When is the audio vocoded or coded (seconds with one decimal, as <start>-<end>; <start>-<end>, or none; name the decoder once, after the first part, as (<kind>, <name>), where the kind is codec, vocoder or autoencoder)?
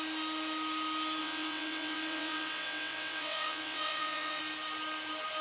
1.2-4.4 (vocoder, WaveNeXt)